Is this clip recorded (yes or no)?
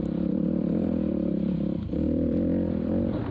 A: no